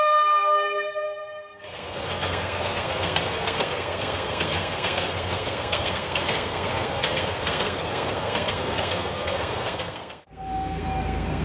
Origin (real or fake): fake